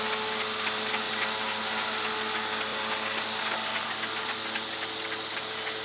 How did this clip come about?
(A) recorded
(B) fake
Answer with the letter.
A